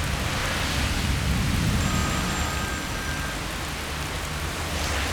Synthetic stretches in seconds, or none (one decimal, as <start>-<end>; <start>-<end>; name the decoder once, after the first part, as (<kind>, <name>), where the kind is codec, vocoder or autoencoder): none